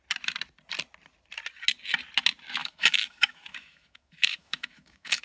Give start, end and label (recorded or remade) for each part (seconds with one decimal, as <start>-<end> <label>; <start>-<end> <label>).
0.0-2.6 recorded; 2.6-5.2 remade